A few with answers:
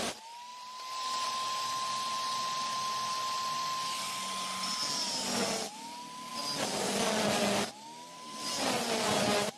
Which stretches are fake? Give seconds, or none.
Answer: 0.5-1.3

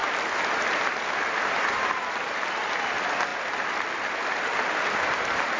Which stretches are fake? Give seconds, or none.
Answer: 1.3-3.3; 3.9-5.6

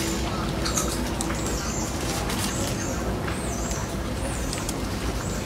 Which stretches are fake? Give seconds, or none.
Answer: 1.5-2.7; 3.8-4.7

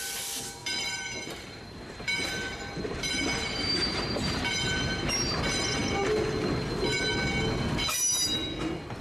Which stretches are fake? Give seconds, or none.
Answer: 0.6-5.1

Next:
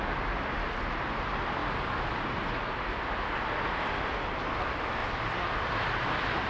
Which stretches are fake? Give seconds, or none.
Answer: none